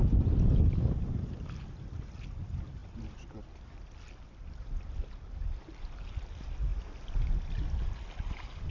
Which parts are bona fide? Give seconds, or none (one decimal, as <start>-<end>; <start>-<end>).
0.0-6.7; 7.3-8.7